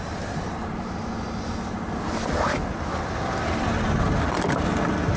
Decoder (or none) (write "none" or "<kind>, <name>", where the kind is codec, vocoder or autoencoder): none